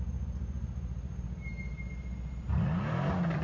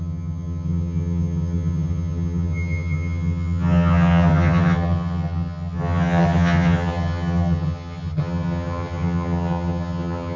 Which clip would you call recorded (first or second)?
first